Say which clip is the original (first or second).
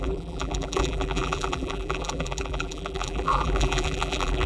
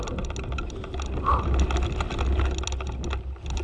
second